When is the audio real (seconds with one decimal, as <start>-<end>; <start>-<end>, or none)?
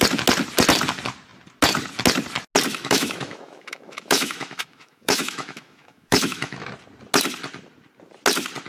0.0-2.7; 6.7-8.7